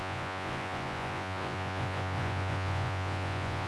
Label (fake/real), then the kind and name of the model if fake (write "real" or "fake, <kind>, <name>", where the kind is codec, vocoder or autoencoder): fake, vocoder, Vocos